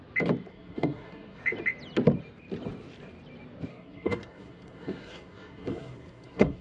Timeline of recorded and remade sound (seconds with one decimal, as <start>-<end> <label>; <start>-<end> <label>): 0.0-0.5 recorded; 0.5-1.4 remade; 1.4-3.7 recorded; 3.7-6.6 remade